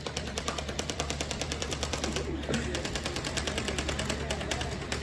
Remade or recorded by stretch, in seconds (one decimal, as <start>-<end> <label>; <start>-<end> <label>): 0.0-2.1 remade; 2.1-4.6 recorded; 4.6-5.0 remade